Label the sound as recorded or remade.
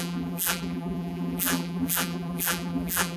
remade